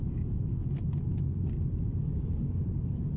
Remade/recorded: recorded